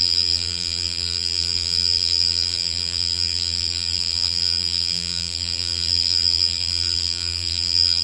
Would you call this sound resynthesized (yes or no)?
yes